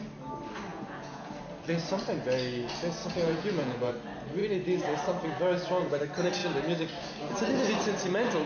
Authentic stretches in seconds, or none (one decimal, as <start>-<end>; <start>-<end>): 0.0-0.7; 1.3-3.0; 3.9-8.5